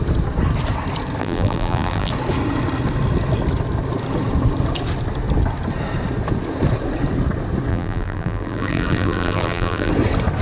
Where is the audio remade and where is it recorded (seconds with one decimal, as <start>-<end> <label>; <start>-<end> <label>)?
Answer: 0.0-1.2 recorded; 1.2-2.1 remade; 2.1-7.7 recorded; 7.7-9.9 remade; 9.9-10.4 recorded